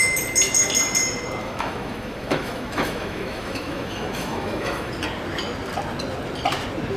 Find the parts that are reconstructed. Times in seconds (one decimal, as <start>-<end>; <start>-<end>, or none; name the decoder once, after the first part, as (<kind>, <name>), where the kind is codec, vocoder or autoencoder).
1.4-4.9 (autoencoder, DAC-VAE)